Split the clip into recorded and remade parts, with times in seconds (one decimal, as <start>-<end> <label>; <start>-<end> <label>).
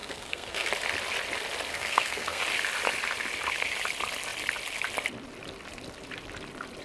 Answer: 0.0-0.7 remade; 0.7-1.7 recorded; 1.7-2.4 remade; 2.4-6.8 recorded